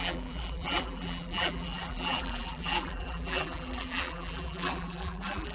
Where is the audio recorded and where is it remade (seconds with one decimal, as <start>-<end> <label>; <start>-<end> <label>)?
0.0-5.5 remade